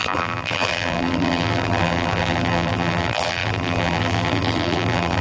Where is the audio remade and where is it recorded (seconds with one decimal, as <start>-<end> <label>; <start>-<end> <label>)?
0.0-5.2 remade